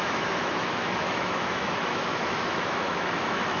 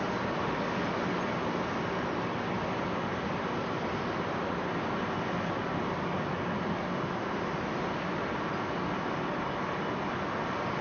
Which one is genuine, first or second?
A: second